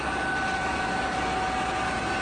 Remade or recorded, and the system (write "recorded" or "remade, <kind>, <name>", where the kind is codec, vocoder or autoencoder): recorded